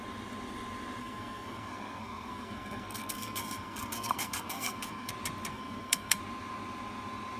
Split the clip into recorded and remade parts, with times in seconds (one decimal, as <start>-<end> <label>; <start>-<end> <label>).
0.0-1.0 recorded; 1.0-5.1 remade; 5.1-5.5 recorded; 5.5-6.2 remade; 6.2-7.4 recorded